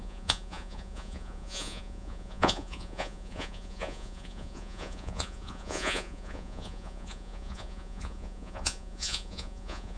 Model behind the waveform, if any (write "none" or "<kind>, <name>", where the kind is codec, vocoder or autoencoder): vocoder, Vocos